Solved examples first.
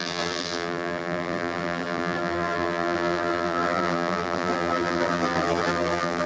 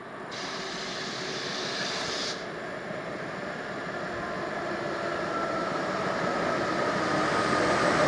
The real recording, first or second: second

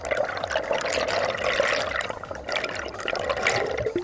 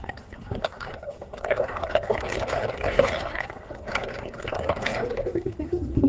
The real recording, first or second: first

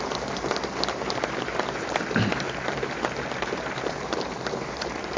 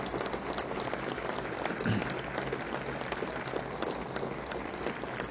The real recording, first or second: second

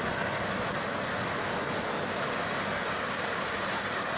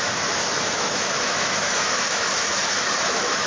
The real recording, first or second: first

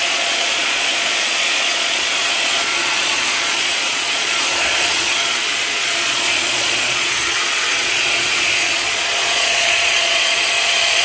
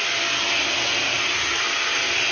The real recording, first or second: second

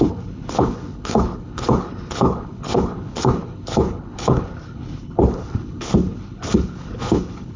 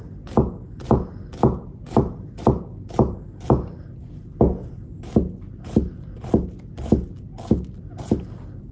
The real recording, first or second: second